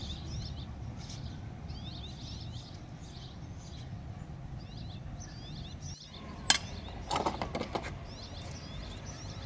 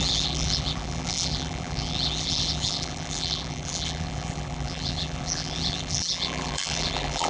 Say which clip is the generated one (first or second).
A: second